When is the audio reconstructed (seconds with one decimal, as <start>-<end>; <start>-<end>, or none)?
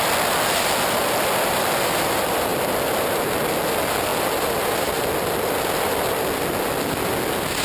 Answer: none